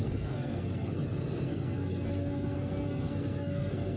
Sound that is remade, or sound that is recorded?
remade